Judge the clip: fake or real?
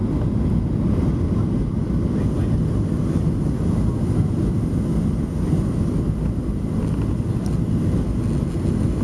real